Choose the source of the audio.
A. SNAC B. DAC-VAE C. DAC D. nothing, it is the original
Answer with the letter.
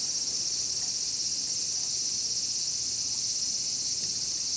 D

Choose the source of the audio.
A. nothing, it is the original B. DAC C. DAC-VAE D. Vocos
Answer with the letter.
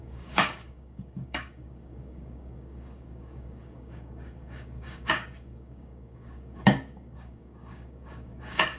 B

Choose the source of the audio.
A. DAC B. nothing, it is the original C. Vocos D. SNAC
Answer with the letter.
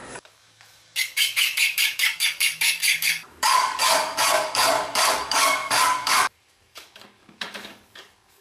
A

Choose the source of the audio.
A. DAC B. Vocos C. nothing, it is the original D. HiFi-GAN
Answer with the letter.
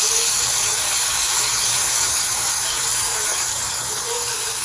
A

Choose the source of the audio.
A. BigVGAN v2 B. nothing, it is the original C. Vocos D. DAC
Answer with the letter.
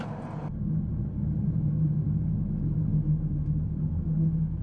B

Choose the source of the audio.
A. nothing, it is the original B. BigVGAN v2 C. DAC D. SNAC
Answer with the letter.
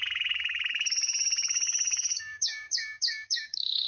C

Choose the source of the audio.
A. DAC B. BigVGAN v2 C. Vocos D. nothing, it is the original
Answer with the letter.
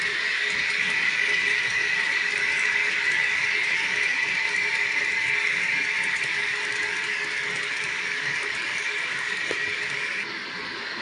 A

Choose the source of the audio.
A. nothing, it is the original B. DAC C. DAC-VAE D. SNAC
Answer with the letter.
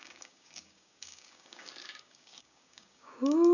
B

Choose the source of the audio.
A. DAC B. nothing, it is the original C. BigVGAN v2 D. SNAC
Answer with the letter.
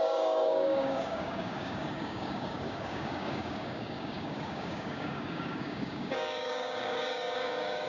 A